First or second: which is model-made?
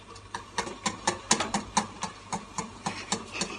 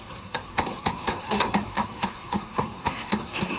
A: second